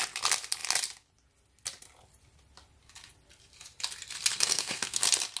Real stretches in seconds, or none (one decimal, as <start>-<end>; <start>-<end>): 0.0-4.3; 5.0-5.4